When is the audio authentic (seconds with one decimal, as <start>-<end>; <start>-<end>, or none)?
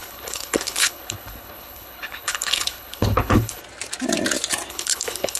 3.6-4.7